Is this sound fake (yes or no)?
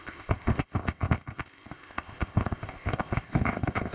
yes